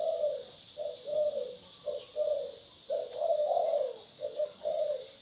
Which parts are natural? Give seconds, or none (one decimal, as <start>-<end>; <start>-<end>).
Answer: 0.0-3.4; 4.8-5.2